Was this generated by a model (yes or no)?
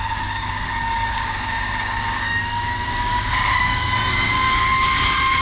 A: yes